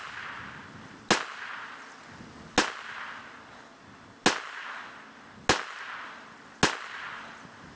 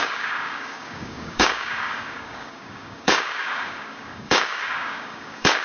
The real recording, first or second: first